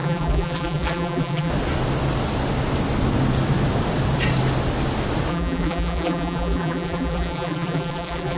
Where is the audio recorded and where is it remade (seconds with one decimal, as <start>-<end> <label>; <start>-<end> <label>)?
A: 0.0-1.5 remade; 1.5-5.3 recorded; 5.3-8.4 remade